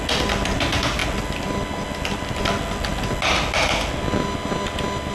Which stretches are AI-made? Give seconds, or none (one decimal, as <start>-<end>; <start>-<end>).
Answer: none